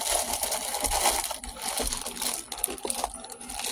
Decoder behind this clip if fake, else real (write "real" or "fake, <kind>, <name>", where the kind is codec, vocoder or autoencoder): real